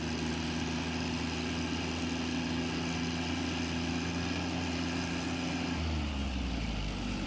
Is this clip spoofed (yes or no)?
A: no